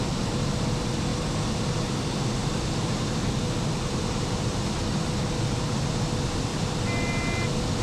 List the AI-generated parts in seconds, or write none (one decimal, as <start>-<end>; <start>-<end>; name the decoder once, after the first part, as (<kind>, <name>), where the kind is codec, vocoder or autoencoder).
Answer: none